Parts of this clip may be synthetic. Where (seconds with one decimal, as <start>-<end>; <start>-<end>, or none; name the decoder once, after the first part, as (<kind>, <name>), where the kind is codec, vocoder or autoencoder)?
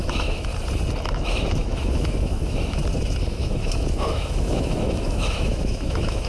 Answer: 0.0-0.5 (autoencoder, DAC-VAE); 1.1-2.8; 3.3-6.3